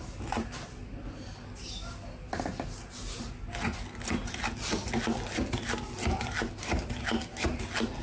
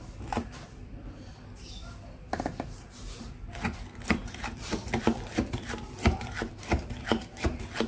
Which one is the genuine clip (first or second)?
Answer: first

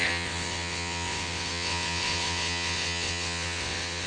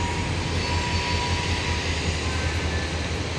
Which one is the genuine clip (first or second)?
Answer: second